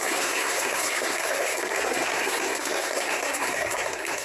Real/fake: fake